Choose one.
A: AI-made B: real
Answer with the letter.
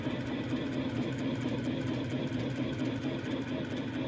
B